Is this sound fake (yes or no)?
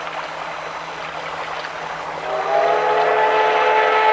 no